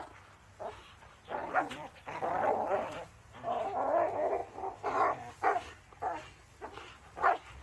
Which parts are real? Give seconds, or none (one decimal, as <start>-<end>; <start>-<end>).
0.0-1.4; 3.6-7.6